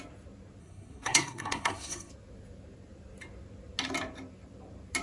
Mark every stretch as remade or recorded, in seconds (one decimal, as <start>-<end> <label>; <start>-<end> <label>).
0.0-0.6 recorded; 0.6-2.1 remade; 2.1-5.0 recorded